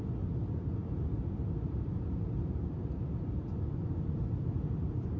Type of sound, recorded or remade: recorded